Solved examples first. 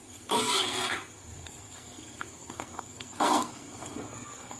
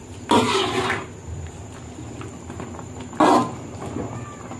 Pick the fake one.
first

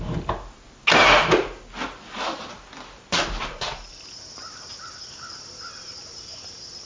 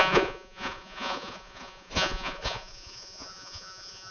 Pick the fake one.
second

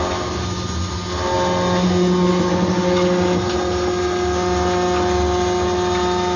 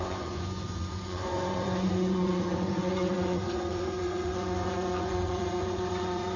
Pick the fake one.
second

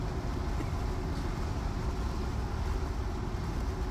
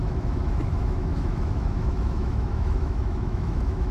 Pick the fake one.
second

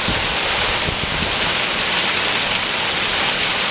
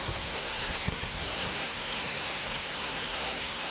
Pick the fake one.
second